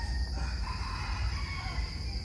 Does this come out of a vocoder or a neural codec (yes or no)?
no